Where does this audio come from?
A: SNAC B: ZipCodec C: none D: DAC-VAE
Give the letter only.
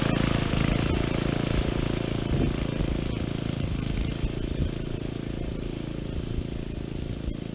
C